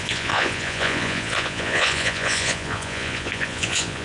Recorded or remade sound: remade